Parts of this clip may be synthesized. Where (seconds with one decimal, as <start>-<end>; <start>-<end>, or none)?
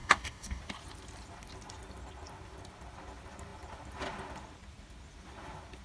0.0-0.6